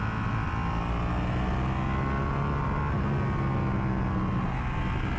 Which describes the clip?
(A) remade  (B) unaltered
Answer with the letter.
B